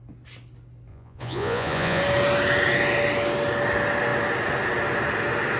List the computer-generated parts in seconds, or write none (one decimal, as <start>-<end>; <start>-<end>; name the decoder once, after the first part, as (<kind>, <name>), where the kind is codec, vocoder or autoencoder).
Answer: 0.9-2.0 (vocoder, Vocos)